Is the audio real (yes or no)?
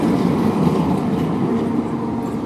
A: yes